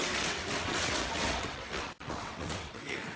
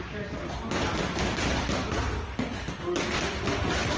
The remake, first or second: first